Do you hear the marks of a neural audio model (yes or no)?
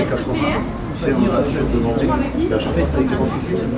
no